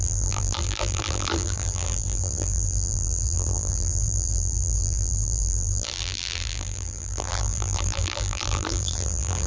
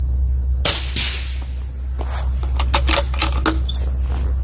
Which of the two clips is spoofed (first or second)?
first